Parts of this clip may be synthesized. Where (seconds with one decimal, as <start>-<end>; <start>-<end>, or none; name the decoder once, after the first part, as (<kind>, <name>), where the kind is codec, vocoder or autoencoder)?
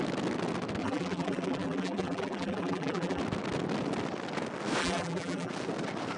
0.8-3.2 (vocoder, BigVGAN v2); 4.8-5.5